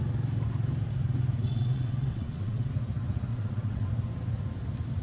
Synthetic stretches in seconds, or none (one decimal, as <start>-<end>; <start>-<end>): 1.5-2.7; 3.3-3.9